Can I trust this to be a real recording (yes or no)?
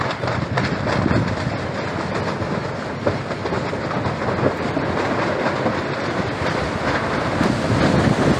yes